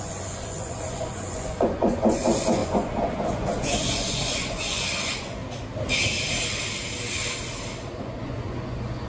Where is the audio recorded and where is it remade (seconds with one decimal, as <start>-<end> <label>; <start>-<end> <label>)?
0.0-5.4 remade; 5.4-8.0 recorded; 8.0-9.1 remade